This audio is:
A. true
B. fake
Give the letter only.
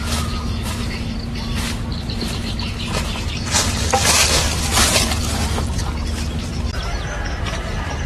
A